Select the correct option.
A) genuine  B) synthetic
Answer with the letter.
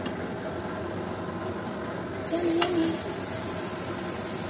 A